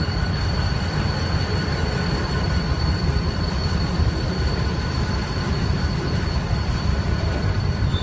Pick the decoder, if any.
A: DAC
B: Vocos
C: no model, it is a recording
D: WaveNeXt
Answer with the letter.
C